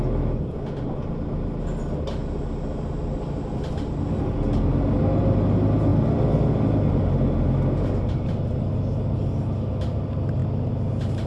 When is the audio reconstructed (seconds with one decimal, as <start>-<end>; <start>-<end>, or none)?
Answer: none